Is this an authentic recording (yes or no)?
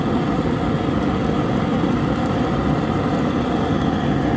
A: yes